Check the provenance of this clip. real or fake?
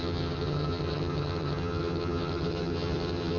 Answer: fake